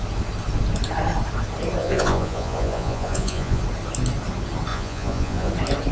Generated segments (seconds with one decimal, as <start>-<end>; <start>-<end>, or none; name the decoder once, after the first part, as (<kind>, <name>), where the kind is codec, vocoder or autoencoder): 1.8-3.6 (vocoder, Vocos); 4.7-5.5